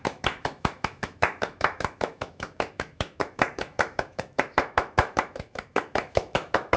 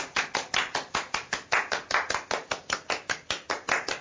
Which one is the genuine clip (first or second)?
second